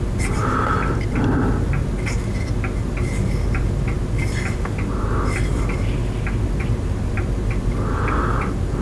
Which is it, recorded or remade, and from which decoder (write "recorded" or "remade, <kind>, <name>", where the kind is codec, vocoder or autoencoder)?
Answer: recorded